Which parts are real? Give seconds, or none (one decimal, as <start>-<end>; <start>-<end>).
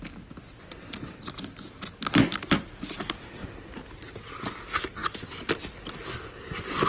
0.0-6.9